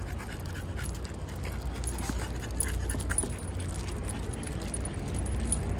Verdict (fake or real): real